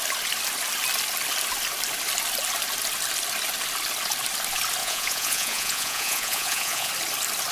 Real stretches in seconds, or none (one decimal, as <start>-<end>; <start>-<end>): 0.0-4.8; 6.9-7.5